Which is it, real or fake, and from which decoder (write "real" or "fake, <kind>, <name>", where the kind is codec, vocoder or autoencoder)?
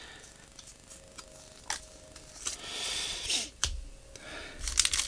real